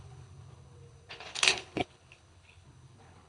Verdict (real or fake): fake